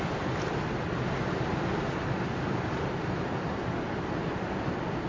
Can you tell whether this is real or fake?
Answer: real